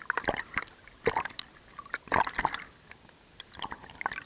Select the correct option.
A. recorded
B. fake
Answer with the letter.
A